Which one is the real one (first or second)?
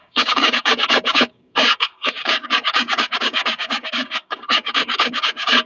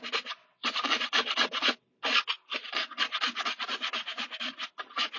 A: second